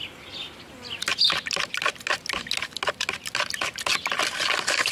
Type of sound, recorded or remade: recorded